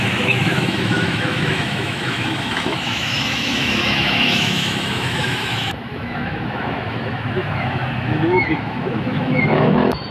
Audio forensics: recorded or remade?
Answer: remade